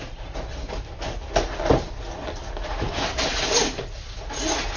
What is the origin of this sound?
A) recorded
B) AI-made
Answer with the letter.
A